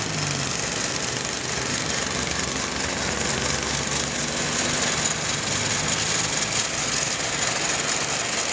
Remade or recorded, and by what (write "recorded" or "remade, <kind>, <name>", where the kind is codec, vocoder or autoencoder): recorded